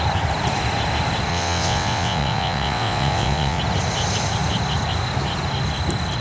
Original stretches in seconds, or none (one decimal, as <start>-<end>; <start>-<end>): 0.0-1.3; 3.6-6.2